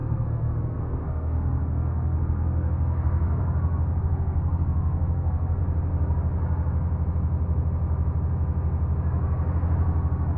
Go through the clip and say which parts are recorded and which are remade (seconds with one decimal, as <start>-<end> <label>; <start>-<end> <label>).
0.0-3.4 remade; 3.4-4.0 recorded; 4.0-5.6 remade; 5.6-10.4 recorded